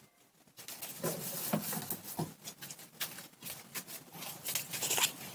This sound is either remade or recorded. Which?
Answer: recorded